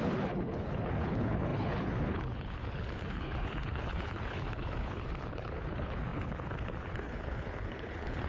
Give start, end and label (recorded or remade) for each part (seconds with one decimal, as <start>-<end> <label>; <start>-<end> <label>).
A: 0.0-8.3 remade